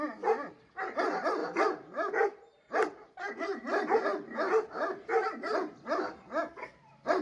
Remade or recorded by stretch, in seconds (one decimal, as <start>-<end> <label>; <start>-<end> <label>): 0.0-7.2 recorded